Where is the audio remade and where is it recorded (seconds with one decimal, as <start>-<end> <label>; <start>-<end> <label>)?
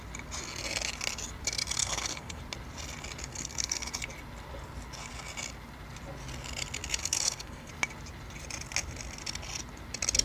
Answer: 0.0-1.8 recorded; 1.8-2.4 remade; 2.4-3.3 recorded; 3.3-3.9 remade; 3.9-7.0 recorded; 7.0-7.7 remade; 7.7-10.2 recorded